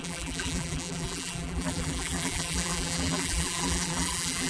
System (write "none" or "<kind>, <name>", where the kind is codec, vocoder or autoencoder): vocoder, BigVGAN v2